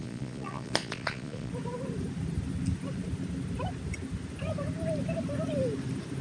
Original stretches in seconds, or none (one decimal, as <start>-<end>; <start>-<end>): 1.5-6.2